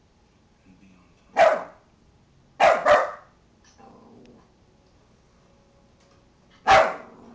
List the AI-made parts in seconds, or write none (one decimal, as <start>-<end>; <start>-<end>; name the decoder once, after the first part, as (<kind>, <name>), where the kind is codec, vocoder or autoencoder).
none

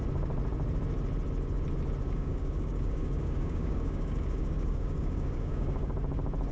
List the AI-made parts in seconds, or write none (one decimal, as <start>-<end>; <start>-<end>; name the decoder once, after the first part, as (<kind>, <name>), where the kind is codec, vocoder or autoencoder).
2.0-5.9 (codec, DAC)

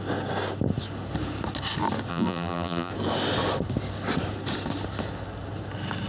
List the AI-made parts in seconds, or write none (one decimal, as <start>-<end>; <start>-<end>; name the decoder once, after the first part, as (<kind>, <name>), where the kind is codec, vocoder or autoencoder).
2.1-2.9 (vocoder, BigVGAN v2)

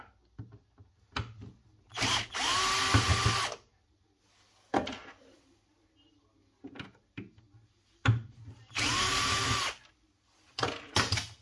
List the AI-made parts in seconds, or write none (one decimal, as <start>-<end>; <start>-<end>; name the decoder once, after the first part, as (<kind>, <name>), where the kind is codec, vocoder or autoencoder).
none

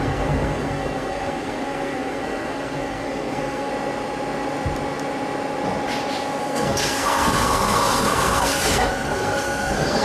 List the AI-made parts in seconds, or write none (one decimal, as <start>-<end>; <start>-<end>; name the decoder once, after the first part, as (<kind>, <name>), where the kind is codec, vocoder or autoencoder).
0.0-3.7 (codec, SNAC); 6.4-10.0

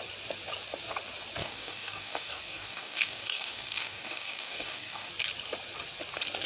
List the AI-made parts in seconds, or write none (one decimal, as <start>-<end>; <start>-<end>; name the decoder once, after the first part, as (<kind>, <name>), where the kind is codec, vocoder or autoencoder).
1.4-5.1 (codec, DAC)

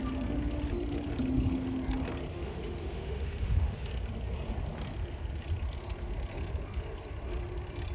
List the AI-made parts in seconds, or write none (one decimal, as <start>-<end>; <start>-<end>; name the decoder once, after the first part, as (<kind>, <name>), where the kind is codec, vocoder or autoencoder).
2.3-3.9 (autoencoder, DAC-VAE)

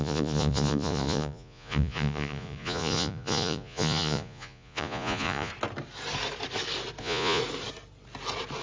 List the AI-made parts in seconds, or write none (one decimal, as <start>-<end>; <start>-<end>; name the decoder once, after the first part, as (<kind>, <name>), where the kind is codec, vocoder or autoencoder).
0.0-5.5 (vocoder, Vocos); 7.0-7.4